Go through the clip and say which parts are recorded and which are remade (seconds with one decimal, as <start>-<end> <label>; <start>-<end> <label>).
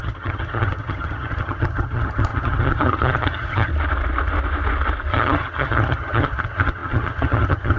0.0-3.7 remade; 3.7-5.1 recorded; 5.1-7.8 remade